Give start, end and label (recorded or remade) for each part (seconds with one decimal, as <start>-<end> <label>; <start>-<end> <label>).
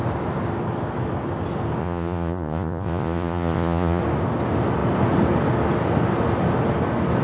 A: 0.0-1.8 recorded; 1.8-4.0 remade; 4.0-7.2 recorded